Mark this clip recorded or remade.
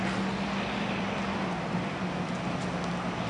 recorded